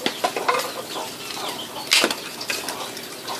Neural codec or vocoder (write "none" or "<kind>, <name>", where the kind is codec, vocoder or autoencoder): none